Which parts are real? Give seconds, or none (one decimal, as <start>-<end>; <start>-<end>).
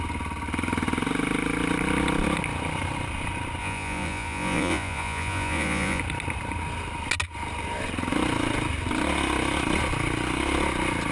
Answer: 0.0-3.6; 6.0-11.1